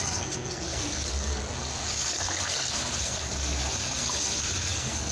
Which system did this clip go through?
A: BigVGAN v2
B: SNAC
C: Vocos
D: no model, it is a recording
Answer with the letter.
B